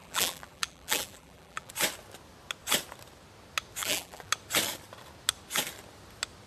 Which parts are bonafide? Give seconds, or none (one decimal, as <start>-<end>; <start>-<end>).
1.7-3.8; 4.3-6.5